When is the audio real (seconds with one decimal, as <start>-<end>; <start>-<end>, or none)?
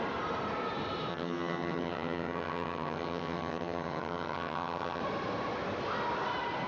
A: 0.0-1.1; 5.0-6.7